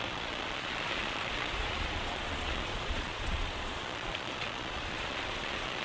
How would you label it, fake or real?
fake